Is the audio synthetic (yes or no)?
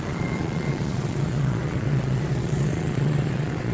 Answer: yes